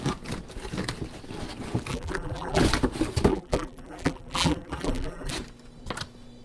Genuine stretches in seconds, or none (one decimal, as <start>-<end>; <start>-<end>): 0.0-1.9; 2.6-3.3; 5.3-6.4